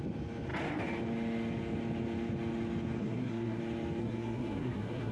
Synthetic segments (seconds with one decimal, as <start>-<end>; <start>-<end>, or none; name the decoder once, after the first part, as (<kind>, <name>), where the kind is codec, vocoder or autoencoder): 3.0-3.6 (codec, SNAC); 4.0-5.1